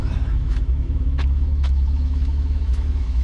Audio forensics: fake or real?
fake